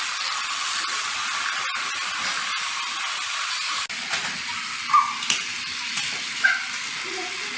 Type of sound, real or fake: real